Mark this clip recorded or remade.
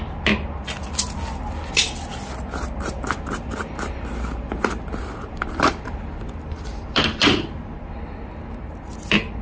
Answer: recorded